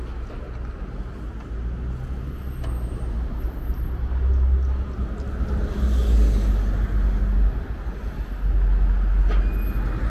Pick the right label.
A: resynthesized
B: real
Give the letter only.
B